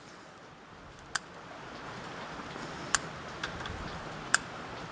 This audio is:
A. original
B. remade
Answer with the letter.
A